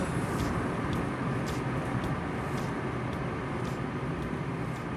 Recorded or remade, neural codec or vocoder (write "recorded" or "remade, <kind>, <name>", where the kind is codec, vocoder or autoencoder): recorded